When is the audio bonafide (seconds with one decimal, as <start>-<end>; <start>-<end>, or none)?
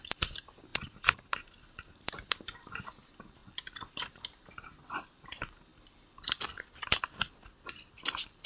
0.0-3.4; 4.4-5.7